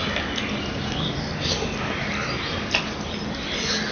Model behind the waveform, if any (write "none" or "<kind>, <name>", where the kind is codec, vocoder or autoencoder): none